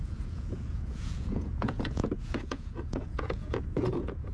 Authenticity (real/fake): fake